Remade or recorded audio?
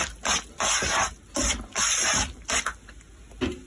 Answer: recorded